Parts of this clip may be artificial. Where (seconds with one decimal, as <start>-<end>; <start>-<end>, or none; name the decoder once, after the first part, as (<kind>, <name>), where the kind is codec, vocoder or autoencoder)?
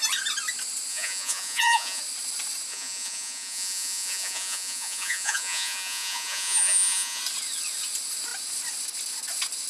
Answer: 0.9-2.0 (vocoder, Vocos); 2.7-7.2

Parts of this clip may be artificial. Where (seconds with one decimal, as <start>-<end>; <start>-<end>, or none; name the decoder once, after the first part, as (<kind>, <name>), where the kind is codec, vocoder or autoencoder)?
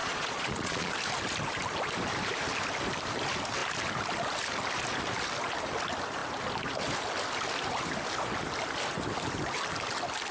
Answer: 0.0-0.9 (vocoder, Vocos)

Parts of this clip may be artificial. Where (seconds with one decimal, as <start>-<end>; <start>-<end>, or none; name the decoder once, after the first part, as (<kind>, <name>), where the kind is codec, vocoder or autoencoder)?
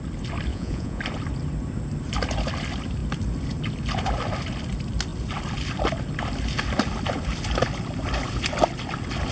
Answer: 0.5-1.0 (vocoder, Vocos)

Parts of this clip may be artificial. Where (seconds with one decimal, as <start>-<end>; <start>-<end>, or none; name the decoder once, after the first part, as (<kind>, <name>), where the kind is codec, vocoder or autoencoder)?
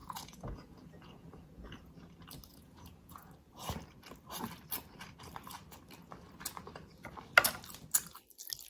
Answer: 0.0-1.9 (vocoder, Vocos); 2.5-3.3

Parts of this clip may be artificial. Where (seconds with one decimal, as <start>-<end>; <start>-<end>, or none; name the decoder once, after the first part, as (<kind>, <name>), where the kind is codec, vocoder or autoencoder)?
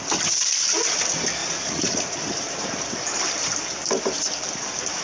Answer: 1.4-2.2 (vocoder, Vocos)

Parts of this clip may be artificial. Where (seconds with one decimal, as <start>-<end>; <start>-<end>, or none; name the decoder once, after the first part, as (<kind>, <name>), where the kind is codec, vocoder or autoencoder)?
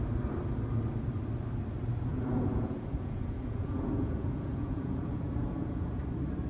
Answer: 2.1-6.0 (vocoder, Vocos)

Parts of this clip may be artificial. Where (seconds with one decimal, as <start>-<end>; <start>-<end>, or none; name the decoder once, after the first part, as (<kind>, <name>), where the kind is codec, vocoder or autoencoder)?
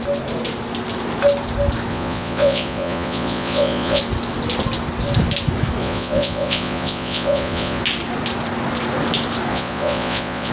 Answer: 1.9-4.0 (vocoder, Vocos); 5.8-7.8; 9.5-10.5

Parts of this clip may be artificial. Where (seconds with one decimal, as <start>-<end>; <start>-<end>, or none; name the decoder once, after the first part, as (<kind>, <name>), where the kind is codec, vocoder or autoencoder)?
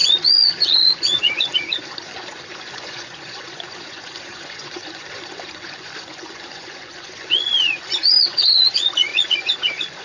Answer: 0.0-10.0 (vocoder, Vocos)